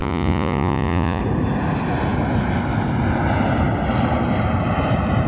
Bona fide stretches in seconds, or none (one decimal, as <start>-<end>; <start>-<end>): 1.2-5.3